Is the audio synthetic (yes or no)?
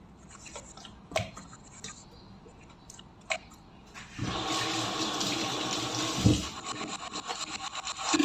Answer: no